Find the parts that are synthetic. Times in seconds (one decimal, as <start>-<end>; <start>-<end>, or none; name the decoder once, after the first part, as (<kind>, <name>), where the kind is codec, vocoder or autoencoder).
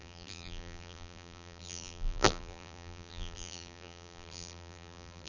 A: 0.0-5.3 (vocoder, BigVGAN v2)